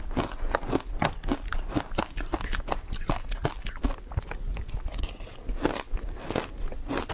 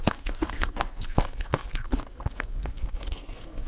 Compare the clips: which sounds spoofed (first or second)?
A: second